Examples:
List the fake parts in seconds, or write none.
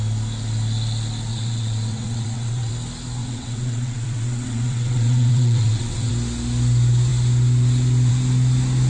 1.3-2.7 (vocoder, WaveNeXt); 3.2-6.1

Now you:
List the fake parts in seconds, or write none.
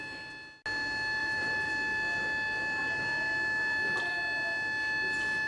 1.2-1.7 (vocoder, BigVGAN v2)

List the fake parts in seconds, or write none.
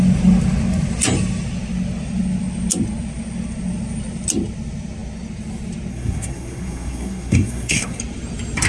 5.9-8.0 (codec, SNAC)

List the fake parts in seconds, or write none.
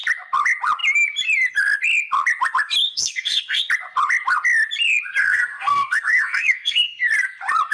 2.9-3.6 (codec, SNAC); 5.2-7.1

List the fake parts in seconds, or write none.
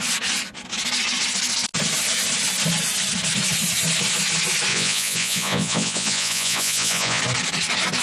4.7-7.2 (vocoder, Vocos)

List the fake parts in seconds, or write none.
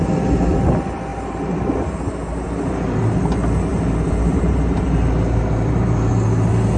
1.1-3.0 (vocoder, BigVGAN v2); 3.7-6.1